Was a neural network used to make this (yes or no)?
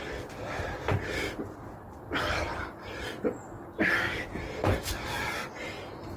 no